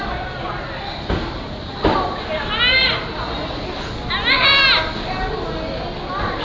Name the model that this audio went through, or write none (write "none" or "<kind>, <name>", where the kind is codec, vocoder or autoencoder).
none